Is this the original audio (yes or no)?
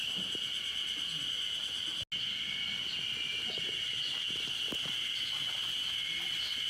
yes